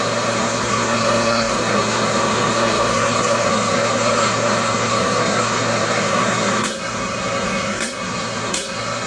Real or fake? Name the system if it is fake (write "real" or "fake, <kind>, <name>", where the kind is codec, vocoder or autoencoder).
fake, codec, SNAC